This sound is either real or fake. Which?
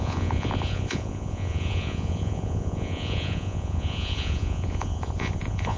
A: fake